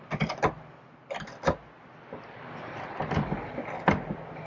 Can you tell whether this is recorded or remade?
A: recorded